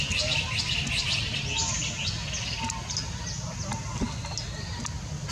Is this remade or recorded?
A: recorded